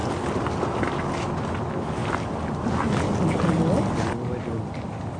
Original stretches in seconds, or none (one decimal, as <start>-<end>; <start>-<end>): 0.6-2.0